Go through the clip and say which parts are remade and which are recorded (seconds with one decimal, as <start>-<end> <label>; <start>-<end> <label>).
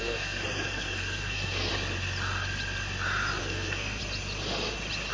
0.0-1.7 remade; 1.7-3.4 recorded; 3.4-4.0 remade; 4.0-5.1 recorded